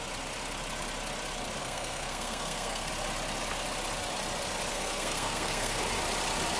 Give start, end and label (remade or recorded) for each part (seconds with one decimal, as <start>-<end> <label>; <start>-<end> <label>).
0.0-1.6 recorded; 1.6-2.9 remade; 2.9-4.7 recorded; 4.7-5.8 remade; 5.8-6.6 recorded